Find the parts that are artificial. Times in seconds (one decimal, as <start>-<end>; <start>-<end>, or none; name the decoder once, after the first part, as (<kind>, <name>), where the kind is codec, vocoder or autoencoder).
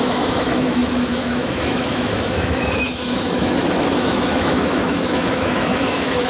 0.0-6.3 (autoencoder, DAC-VAE)